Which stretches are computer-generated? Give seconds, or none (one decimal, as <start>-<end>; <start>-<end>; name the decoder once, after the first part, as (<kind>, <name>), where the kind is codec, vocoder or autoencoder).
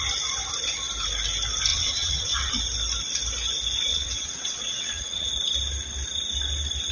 1.7-2.5 (vocoder, WaveNeXt); 3.9-5.3